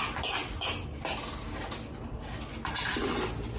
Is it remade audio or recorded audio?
recorded